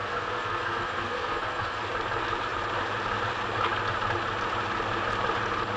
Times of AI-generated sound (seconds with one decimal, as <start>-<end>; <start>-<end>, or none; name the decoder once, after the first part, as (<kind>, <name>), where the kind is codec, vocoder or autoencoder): 0.0-1.8 (codec, SNAC)